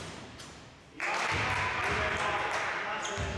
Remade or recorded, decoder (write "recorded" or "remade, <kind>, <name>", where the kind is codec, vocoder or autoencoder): recorded